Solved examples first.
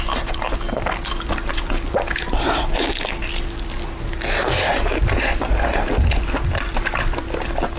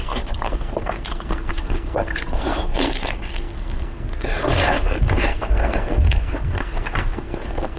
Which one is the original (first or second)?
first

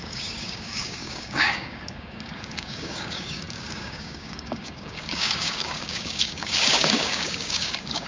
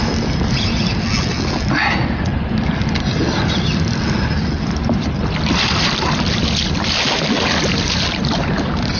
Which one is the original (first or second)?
second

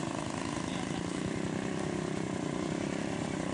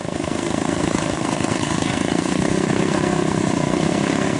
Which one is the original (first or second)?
first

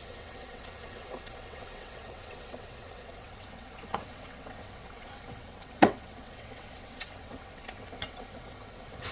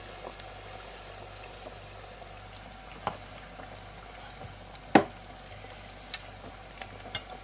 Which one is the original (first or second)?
second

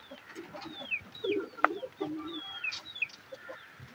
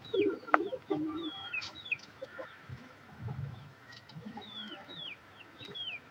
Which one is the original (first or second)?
first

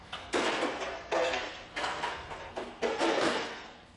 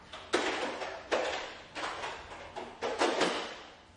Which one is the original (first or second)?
second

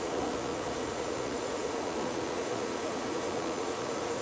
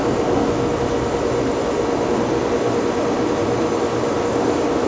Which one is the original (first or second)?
second